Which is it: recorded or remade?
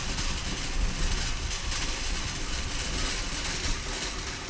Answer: recorded